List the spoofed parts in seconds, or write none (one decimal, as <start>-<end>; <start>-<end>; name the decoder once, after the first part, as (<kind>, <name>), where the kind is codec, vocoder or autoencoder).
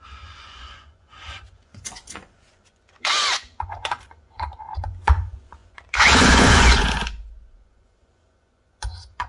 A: 0.0-9.3 (vocoder, Vocos)